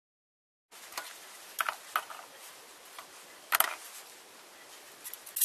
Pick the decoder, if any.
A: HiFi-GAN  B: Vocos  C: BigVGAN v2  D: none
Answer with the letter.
D